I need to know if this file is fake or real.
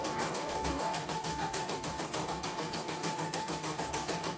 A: fake